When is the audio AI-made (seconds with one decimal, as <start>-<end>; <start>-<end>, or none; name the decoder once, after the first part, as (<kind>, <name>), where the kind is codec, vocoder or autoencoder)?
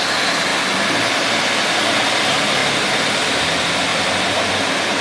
3.9-4.5 (vocoder, BigVGAN v2)